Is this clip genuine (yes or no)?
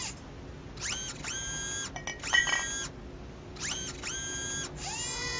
yes